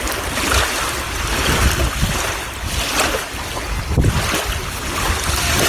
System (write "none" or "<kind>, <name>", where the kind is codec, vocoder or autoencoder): vocoder, BigVGAN v2